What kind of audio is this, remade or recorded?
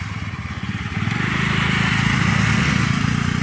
recorded